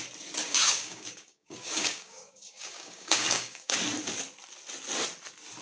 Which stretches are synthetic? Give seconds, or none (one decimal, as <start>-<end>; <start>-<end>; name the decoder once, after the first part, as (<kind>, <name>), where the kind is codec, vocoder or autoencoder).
0.4-3.8 (codec, DAC)